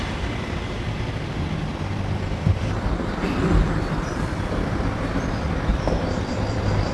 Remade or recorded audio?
remade